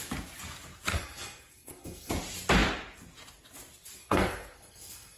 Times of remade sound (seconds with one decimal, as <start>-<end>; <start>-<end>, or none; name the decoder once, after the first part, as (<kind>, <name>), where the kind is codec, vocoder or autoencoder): 0.9-2.1 (codec, SNAC); 4.0-5.2